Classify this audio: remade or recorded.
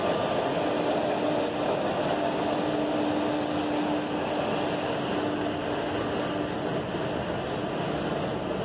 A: recorded